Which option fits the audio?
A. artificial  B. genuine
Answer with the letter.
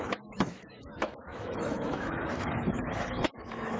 A